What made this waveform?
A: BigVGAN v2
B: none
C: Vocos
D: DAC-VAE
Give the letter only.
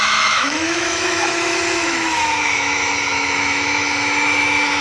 D